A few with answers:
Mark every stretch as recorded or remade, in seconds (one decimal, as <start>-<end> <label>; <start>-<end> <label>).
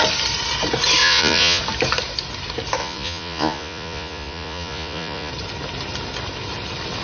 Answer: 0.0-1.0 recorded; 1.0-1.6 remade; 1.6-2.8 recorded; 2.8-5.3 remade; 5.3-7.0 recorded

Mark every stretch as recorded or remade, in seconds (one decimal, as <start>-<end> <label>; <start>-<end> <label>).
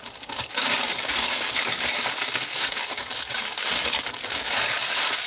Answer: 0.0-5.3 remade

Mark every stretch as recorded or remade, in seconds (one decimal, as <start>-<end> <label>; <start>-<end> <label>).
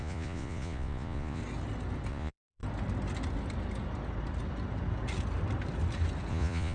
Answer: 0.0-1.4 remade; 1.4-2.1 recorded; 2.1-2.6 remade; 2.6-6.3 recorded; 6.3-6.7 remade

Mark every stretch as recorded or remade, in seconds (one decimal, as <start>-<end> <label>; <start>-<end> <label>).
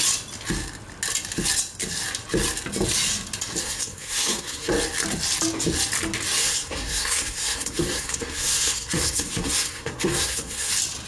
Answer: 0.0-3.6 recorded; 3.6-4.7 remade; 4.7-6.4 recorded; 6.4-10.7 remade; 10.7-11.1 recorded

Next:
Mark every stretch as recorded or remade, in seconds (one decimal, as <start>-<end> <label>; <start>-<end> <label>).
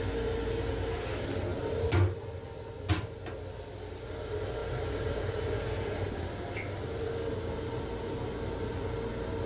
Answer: 0.0-9.5 recorded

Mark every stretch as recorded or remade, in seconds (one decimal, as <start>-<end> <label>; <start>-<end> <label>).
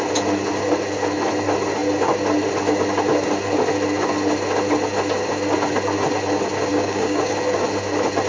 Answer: 0.0-6.7 recorded; 6.7-7.3 remade; 7.3-8.3 recorded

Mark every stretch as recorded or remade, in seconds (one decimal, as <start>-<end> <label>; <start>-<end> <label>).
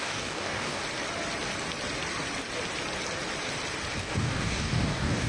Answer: 0.0-0.8 remade; 0.8-4.0 recorded; 4.0-5.3 remade